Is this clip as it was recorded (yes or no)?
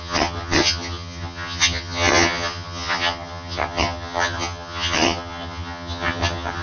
no